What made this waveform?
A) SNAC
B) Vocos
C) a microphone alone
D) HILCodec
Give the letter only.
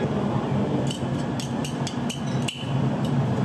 C